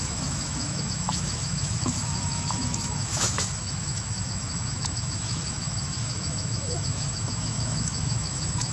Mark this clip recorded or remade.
remade